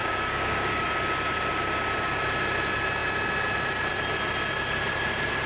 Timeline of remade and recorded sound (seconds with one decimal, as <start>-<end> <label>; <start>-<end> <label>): 0.0-1.0 remade; 1.0-5.5 recorded